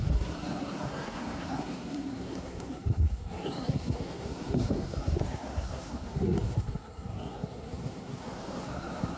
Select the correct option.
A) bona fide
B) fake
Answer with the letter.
B